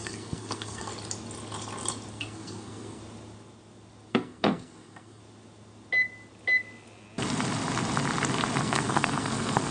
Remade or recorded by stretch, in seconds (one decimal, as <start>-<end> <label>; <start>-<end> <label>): 0.0-0.9 remade; 0.9-2.1 recorded; 2.1-3.0 remade; 3.0-4.1 recorded; 4.1-5.2 remade; 5.2-8.6 recorded; 8.6-9.7 remade